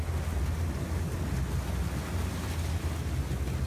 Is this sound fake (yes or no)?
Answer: no